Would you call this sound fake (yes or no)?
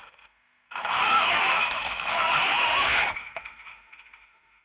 yes